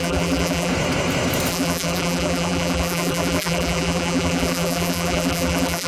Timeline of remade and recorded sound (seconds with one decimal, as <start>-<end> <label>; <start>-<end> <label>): 0.0-0.7 remade; 0.7-1.5 recorded; 1.5-5.9 remade